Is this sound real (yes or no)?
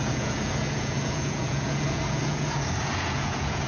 no